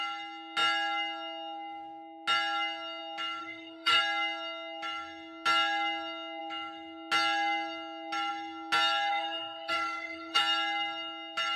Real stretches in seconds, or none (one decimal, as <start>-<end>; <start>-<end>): 0.0-3.4; 4.0-9.1; 10.4-11.6